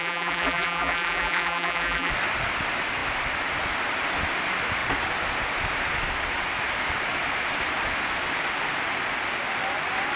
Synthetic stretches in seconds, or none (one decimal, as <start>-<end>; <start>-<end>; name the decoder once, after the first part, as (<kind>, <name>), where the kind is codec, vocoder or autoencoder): 0.0-2.1 (vocoder, BigVGAN v2)